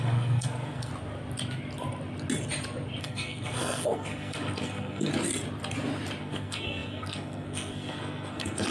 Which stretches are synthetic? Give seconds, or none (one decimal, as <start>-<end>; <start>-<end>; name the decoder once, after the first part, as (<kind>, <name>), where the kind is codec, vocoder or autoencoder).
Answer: 0.0-0.9 (codec, SNAC); 3.0-5.1; 6.2-8.7